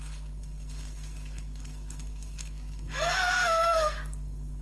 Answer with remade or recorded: remade